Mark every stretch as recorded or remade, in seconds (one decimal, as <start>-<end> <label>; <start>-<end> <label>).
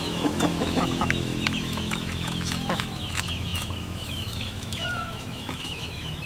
0.0-6.3 remade